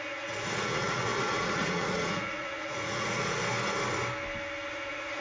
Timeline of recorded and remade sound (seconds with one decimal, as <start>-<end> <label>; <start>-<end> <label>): 0.0-3.4 remade; 3.4-4.7 recorded; 4.7-5.2 remade